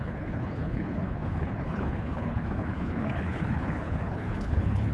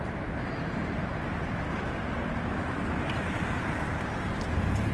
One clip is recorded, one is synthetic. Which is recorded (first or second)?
second